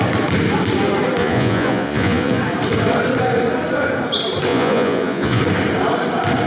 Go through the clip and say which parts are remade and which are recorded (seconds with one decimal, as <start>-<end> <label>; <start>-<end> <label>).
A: 0.0-1.2 recorded; 1.2-2.4 remade; 2.4-4.5 recorded; 4.5-5.4 remade; 5.4-6.5 recorded